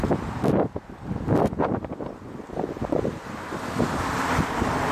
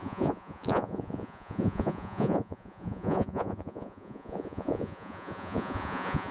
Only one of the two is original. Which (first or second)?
first